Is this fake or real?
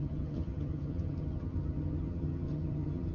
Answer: fake